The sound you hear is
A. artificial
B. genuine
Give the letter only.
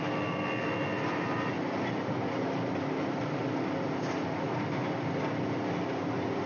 B